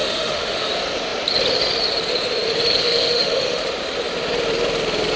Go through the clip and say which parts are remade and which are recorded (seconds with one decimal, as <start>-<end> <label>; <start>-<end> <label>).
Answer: 0.0-0.7 remade; 0.7-2.8 recorded; 2.8-3.6 remade; 3.6-5.2 recorded